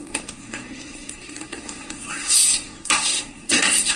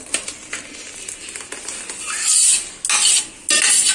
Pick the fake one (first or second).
first